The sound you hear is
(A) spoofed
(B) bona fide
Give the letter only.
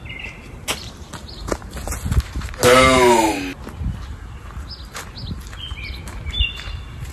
B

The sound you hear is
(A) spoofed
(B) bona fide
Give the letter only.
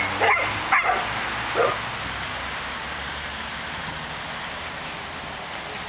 B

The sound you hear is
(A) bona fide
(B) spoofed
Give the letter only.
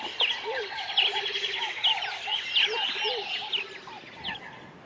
A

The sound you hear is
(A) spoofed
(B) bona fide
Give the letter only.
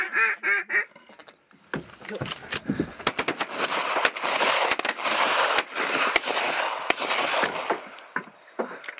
B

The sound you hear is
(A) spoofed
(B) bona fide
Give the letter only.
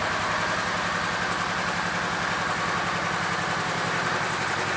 B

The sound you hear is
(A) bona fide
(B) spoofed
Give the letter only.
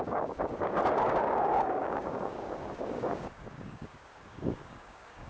B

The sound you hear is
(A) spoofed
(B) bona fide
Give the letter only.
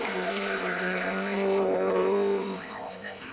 A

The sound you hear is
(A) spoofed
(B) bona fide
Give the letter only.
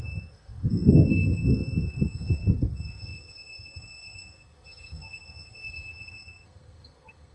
A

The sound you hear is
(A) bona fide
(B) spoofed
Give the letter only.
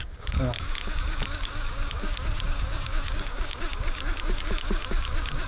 B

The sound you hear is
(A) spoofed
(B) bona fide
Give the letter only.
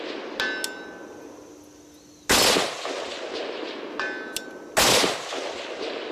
B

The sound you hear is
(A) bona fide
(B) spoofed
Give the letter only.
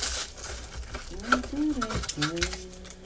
A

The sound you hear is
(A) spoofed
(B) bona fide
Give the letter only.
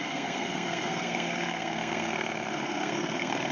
A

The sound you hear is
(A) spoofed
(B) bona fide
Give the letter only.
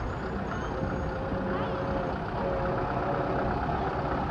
B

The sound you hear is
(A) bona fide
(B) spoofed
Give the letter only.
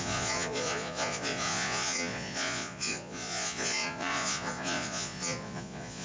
B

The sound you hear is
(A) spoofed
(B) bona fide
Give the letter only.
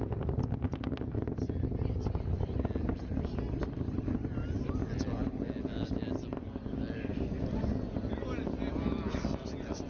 B